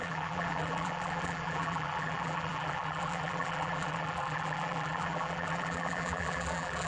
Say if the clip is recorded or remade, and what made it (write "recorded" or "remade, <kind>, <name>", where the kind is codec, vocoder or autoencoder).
remade, vocoder, BigVGAN v2